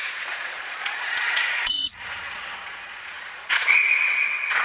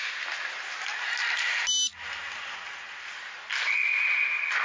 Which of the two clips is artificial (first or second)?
first